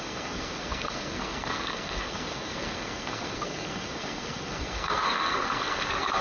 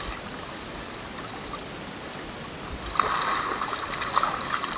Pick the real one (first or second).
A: second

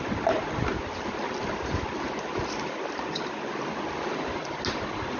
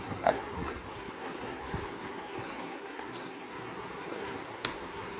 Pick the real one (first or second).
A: first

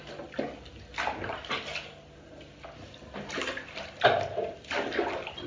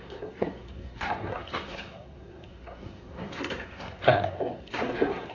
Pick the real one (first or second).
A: first